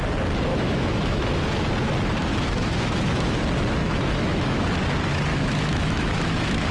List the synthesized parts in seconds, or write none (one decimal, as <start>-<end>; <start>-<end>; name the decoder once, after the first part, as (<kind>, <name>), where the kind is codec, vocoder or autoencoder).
0.5-1.4 (autoencoder, DAC-VAE); 2.2-3.4; 3.8-4.6; 5.3-6.7